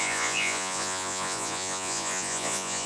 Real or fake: fake